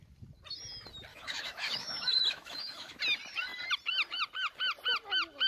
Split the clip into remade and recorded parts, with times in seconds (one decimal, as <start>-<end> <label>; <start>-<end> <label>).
0.0-1.1 recorded; 1.1-3.0 remade; 3.0-5.5 recorded

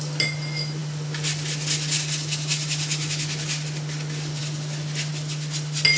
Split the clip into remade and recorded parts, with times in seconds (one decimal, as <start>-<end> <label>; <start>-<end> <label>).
0.0-6.0 recorded

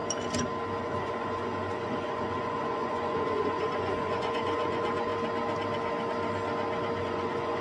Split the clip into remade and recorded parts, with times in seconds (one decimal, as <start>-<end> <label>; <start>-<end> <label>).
0.0-0.8 recorded; 0.8-5.1 remade; 5.1-7.0 recorded; 7.0-7.6 remade

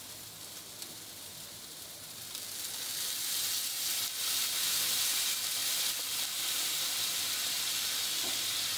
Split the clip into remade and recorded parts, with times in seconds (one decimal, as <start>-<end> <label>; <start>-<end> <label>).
0.0-0.4 recorded; 0.4-2.2 remade; 2.2-8.8 recorded

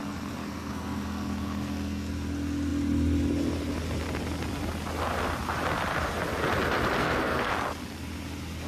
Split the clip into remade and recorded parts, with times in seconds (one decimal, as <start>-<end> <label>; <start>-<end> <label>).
0.0-0.4 recorded; 0.4-2.1 remade; 2.1-7.0 recorded; 7.0-7.5 remade; 7.5-8.7 recorded

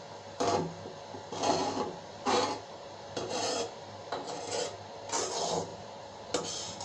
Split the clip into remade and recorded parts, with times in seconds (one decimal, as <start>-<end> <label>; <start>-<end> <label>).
0.0-1.6 recorded; 1.6-4.6 remade; 4.6-5.7 recorded; 5.7-6.2 remade; 6.2-6.8 recorded

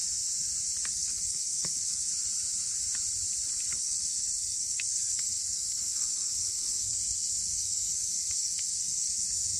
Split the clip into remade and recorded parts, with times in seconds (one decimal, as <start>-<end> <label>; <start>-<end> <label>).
0.0-0.9 recorded; 0.9-2.1 remade; 2.1-3.8 recorded; 3.8-9.6 remade

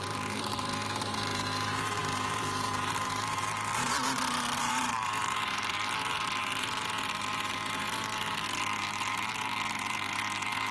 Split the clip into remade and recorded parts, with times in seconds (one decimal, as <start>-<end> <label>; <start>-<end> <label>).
0.0-10.7 remade